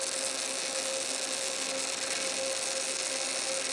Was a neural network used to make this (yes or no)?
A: no